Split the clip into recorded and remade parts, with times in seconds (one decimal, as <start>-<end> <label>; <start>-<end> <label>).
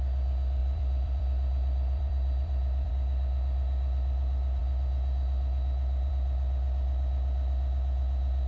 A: 0.0-0.6 recorded; 0.6-2.9 remade; 2.9-8.5 recorded